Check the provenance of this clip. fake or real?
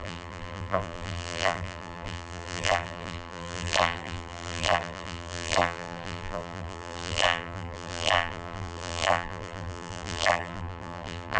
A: fake